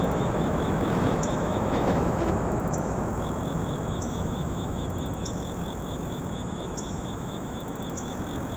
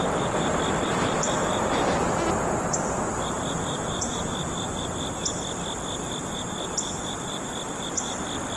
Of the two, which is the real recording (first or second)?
second